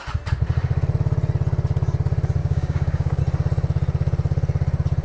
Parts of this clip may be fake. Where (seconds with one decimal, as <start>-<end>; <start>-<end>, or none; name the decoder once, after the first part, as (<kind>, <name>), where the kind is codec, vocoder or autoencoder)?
2.4-3.2 (codec, DAC)